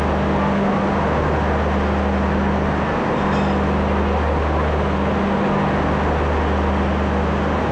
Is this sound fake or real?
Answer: real